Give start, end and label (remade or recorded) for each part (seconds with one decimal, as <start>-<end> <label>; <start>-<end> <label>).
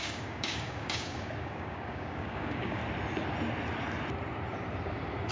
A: 0.0-2.8 remade; 2.8-5.3 recorded